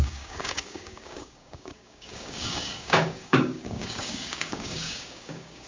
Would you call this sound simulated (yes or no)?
yes